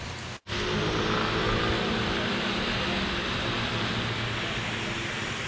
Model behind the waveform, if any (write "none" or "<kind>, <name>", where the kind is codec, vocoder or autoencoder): none